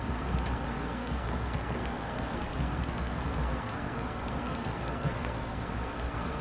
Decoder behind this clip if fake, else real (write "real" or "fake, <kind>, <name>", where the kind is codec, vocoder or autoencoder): fake, codec, SNAC